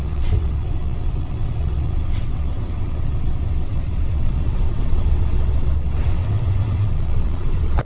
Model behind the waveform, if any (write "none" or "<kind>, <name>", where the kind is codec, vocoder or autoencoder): vocoder, WaveNeXt